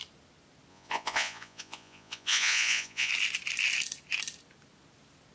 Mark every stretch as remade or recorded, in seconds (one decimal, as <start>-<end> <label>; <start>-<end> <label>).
0.0-0.7 recorded; 0.7-3.1 remade; 3.1-5.3 recorded